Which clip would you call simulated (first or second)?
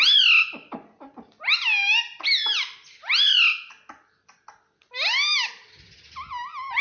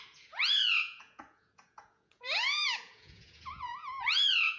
second